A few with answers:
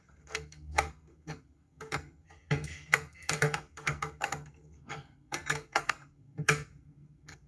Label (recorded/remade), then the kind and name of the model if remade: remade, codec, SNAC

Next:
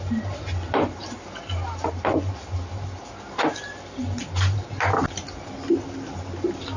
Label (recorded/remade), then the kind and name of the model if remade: recorded